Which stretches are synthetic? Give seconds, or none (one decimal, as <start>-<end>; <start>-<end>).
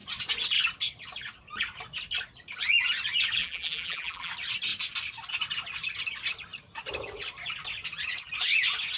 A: 3.4-4.3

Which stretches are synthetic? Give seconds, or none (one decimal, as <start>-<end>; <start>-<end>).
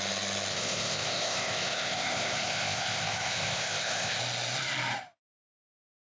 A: 0.5-4.2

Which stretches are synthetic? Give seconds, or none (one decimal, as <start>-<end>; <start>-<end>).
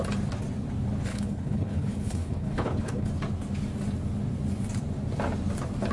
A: 1.1-3.1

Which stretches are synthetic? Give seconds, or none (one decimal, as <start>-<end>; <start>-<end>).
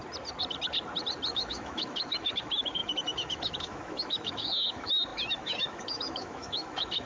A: 1.3-7.1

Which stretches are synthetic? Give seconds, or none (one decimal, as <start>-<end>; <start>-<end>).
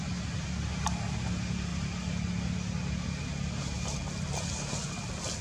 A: none